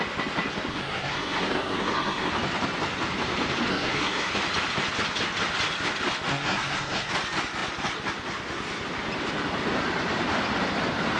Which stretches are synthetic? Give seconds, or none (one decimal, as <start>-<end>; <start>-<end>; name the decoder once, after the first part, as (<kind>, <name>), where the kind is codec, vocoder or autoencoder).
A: 0.7-2.3 (codec, SNAC); 3.7-4.3; 6.3-7.1